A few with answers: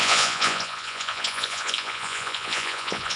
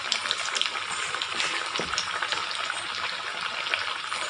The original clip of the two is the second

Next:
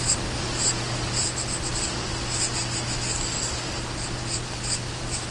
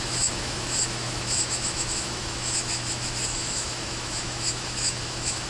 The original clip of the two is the first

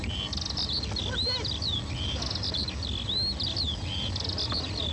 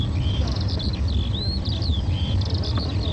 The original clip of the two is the first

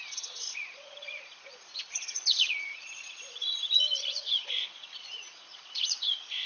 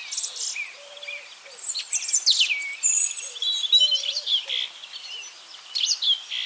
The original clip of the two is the second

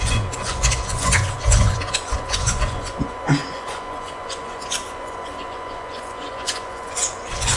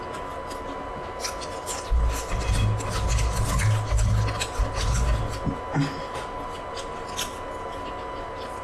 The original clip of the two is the second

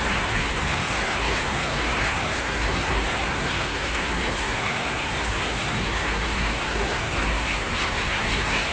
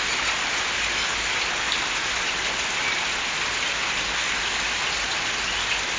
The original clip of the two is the second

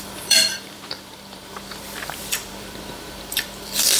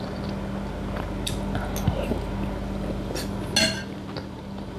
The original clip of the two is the second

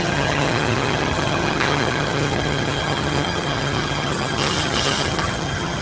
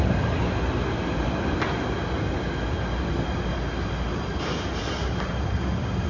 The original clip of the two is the second